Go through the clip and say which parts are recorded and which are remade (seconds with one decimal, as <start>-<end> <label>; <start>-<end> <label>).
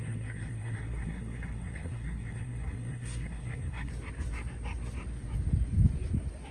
0.0-3.9 remade; 3.9-6.5 recorded